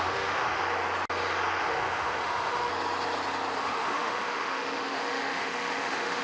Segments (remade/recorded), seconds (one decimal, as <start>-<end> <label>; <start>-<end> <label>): 0.0-0.6 remade; 0.6-1.6 recorded; 1.6-2.7 remade; 2.7-3.6 recorded; 3.6-6.2 remade